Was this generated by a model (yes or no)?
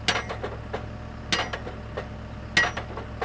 no